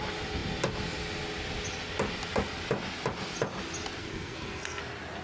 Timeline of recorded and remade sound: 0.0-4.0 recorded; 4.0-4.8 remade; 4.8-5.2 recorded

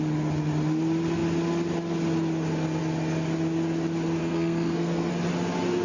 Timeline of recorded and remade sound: 0.0-4.2 recorded; 4.2-5.1 remade; 5.1-5.8 recorded

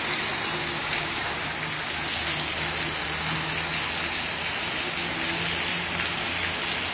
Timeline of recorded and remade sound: 0.0-0.6 recorded; 0.6-1.4 remade; 1.4-6.9 recorded

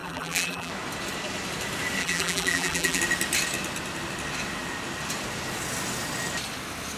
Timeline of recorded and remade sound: 0.0-0.7 remade; 0.7-2.0 recorded; 2.0-3.0 remade; 3.0-7.0 recorded

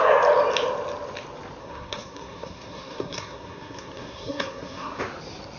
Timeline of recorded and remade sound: 0.0-1.6 recorded; 1.6-5.0 remade; 5.0-5.6 recorded

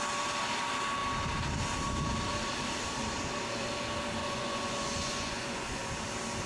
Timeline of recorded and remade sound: 0.0-4.2 recorded; 4.2-5.8 remade; 5.8-6.5 recorded